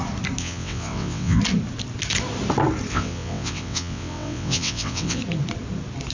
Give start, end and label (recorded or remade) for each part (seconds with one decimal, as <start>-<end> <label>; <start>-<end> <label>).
0.0-0.4 recorded; 0.4-1.4 remade; 1.4-2.9 recorded; 2.9-5.2 remade; 5.2-6.1 recorded